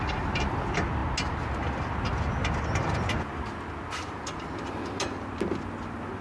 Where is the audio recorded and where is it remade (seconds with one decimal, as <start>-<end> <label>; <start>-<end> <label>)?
0.0-6.2 recorded